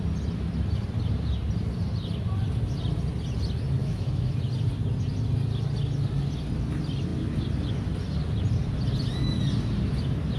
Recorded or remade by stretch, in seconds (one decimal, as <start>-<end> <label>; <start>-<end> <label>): 0.0-3.8 recorded; 3.8-4.3 remade; 4.3-10.4 recorded